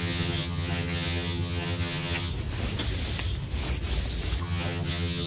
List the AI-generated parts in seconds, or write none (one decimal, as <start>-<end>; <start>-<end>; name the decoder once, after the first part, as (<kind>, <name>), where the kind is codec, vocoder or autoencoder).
0.0-2.3 (vocoder, HiFi-GAN); 4.4-5.3